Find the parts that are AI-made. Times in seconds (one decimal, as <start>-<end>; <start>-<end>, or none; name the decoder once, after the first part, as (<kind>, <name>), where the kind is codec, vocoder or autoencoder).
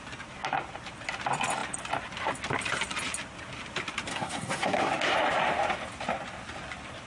4.1-4.9 (codec, SNAC)